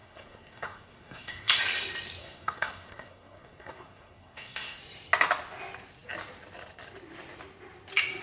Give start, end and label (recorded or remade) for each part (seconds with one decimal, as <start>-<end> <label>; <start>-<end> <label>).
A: 0.0-1.6 remade; 1.6-2.2 recorded; 2.2-4.8 remade; 4.8-8.2 recorded